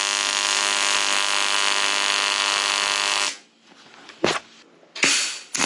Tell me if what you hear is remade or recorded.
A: recorded